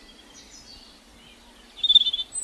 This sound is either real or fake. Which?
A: real